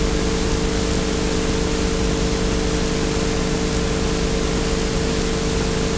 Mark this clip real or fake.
real